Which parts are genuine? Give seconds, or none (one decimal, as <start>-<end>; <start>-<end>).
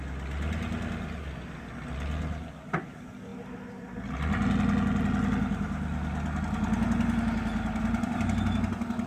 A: 0.0-9.1